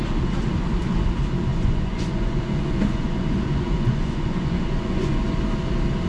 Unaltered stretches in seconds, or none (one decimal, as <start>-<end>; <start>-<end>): 0.0-1.5; 5.2-6.1